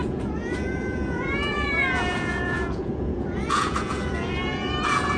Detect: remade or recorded remade